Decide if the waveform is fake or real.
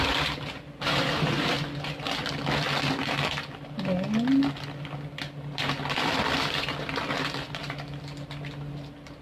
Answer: fake